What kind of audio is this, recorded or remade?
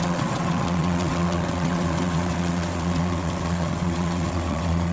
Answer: remade